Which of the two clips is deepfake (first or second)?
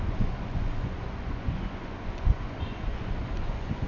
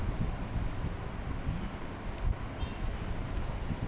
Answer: first